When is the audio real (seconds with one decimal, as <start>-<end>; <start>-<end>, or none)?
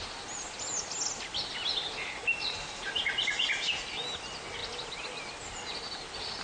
0.0-6.4